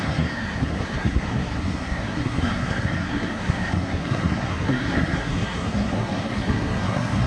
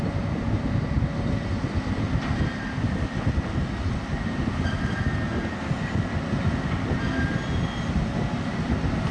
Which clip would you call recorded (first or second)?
second